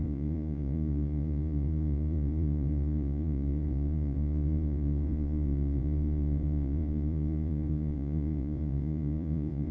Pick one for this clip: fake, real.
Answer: fake